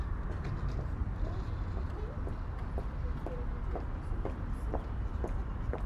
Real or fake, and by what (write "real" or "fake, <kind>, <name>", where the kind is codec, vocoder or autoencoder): real